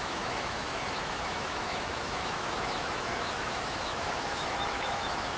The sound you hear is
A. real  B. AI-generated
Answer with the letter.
B